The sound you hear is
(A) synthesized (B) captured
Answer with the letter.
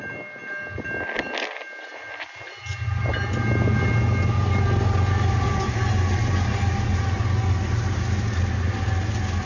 B